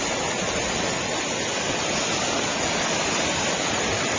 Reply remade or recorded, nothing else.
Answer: recorded